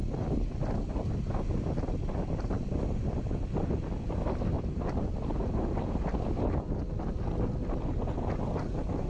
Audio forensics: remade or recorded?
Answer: recorded